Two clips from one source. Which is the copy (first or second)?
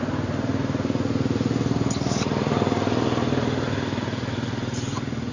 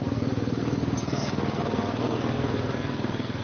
second